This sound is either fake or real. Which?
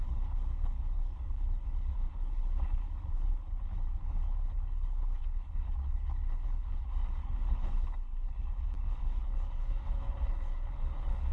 fake